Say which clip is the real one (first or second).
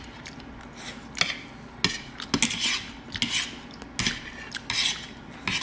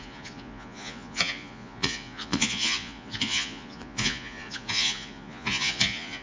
first